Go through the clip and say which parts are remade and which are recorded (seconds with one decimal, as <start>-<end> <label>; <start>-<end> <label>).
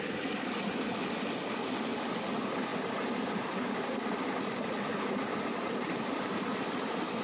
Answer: 0.0-2.7 recorded; 2.7-7.2 remade